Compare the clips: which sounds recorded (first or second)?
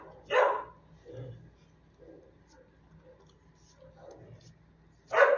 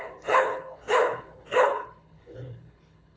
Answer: first